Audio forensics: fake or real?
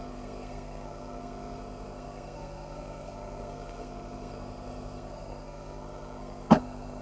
fake